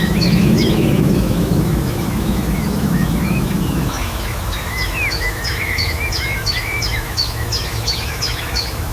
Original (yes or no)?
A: no